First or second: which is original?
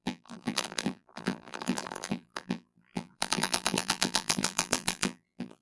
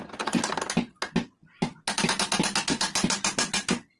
second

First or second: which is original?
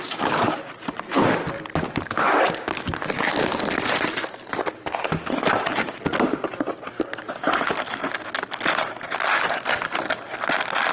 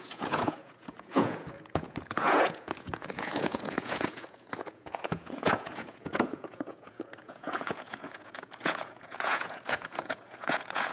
first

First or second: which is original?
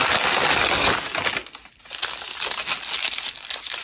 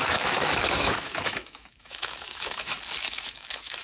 first